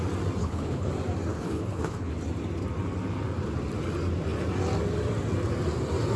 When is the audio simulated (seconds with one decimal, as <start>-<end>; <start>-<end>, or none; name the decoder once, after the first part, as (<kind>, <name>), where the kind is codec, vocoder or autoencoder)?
0.4-0.9 (codec, HILCodec); 1.3-2.1